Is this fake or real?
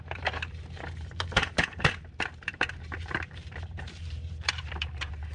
fake